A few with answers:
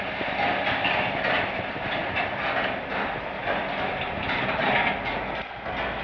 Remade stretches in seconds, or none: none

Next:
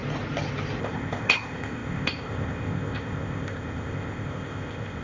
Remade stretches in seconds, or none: 0.8-5.0 (codec, ZipCodec)

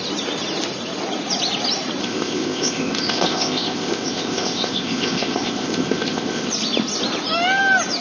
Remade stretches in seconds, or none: 2.0-6.5 (codec, ZipCodec)